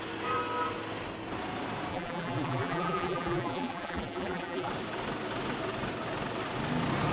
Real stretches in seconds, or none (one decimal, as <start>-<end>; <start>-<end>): 0.0-1.9; 4.7-7.1